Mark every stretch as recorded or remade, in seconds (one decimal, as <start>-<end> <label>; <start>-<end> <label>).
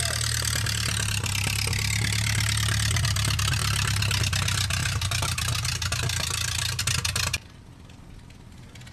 0.0-4.8 recorded; 4.8-6.8 remade; 6.8-8.9 recorded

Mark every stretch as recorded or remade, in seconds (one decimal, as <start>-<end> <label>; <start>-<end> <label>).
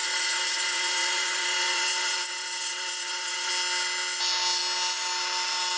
0.0-3.5 remade; 3.5-5.8 recorded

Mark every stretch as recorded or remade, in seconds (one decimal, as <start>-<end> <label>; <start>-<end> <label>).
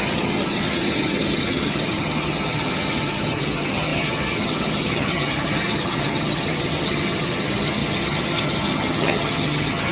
0.0-9.9 remade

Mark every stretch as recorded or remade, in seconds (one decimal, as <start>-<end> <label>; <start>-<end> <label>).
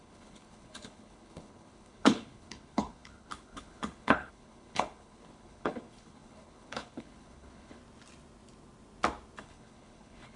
0.0-7.8 remade; 7.8-9.4 recorded; 9.4-10.4 remade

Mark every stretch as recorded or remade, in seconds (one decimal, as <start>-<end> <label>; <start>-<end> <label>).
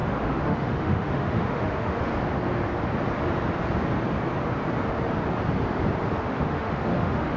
0.0-2.1 remade; 2.1-6.2 recorded; 6.2-7.4 remade